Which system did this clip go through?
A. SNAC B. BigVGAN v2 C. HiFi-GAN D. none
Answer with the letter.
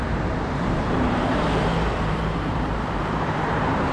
B